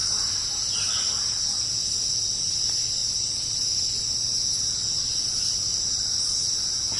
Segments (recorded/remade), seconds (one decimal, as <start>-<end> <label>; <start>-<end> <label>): 0.0-7.0 recorded